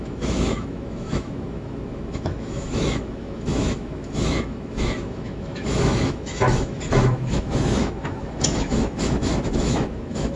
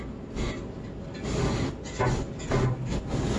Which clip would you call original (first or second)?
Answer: second